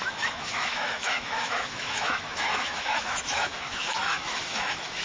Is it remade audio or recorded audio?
remade